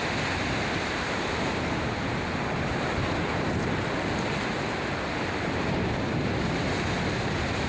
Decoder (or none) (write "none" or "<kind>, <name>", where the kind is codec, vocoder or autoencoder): none